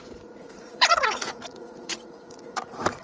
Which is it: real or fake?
fake